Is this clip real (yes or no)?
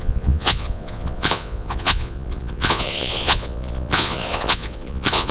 no